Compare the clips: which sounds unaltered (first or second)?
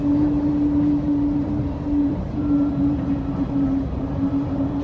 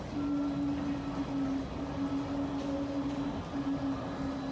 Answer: second